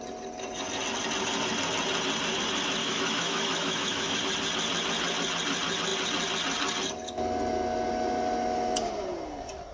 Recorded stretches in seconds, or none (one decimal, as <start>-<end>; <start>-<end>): 0.0-2.8; 4.2-9.7